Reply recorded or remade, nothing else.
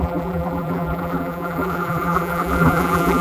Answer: remade